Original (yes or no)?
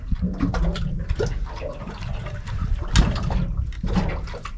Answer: yes